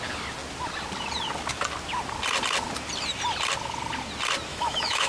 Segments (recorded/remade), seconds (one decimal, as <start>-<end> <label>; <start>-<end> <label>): 0.0-4.5 recorded; 4.5-5.1 remade